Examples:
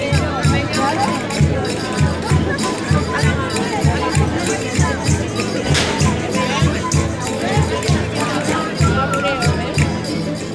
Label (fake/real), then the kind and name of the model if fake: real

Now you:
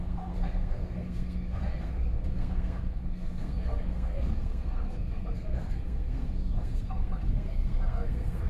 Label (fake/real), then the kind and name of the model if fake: fake, codec, SNAC